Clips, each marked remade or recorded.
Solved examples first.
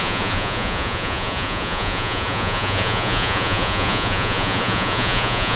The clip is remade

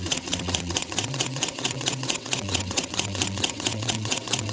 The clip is remade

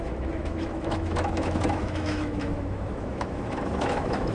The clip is remade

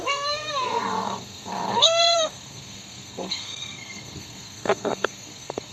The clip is remade